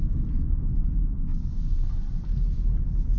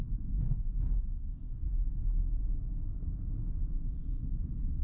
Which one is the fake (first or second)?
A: second